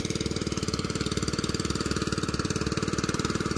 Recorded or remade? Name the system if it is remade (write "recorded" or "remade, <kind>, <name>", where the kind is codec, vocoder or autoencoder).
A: recorded